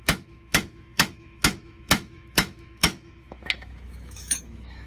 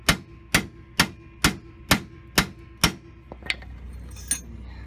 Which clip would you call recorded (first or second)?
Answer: second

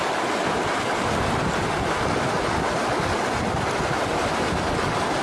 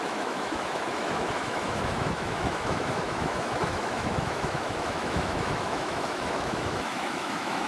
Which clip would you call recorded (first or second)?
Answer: first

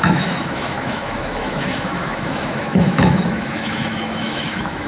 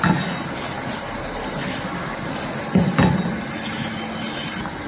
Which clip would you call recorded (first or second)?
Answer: second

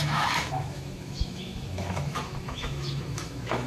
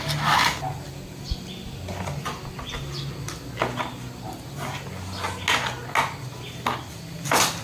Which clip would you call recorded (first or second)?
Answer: second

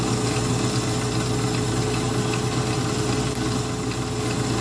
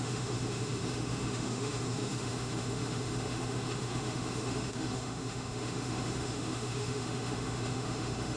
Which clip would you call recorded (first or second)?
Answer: first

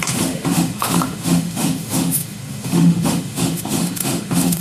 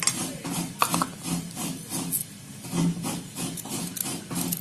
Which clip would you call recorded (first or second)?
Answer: second